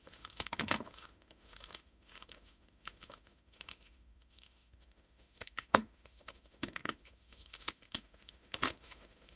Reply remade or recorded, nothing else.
remade